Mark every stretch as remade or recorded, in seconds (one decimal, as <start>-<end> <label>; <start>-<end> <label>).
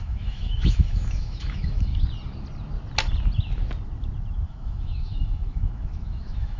0.0-1.9 remade; 1.9-4.5 recorded; 4.5-6.6 remade